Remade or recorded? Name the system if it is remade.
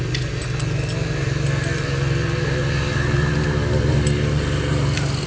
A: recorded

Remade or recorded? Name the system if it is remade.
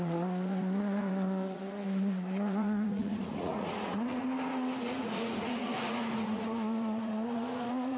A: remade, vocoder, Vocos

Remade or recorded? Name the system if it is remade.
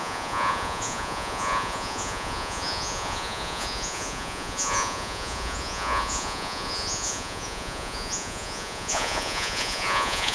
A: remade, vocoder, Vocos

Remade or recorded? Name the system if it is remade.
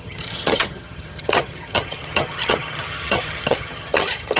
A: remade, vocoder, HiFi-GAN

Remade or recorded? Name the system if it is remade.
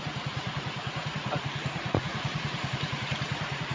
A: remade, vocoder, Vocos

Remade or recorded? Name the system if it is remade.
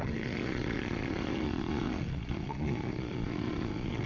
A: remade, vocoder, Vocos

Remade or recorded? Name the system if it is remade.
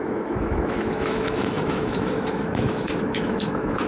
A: remade, autoencoder, DAC-VAE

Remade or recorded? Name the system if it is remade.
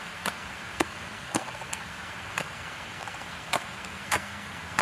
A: remade, codec, SNAC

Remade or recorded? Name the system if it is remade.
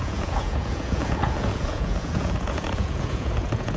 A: remade, vocoder, Vocos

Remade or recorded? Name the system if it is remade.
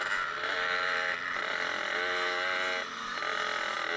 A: recorded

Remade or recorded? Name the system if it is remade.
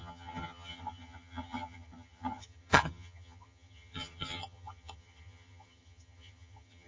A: remade, vocoder, HiFi-GAN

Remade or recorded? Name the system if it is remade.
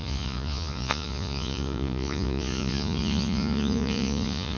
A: remade, vocoder, Vocos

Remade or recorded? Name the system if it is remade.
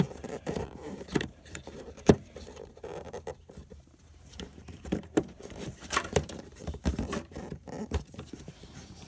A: remade, vocoder, BigVGAN v2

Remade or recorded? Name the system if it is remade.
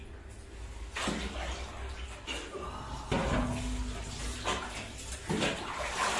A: recorded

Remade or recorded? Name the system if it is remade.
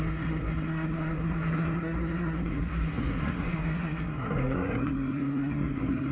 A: remade, codec, SNAC